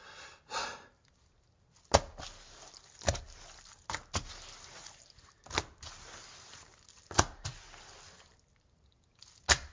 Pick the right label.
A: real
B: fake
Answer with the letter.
A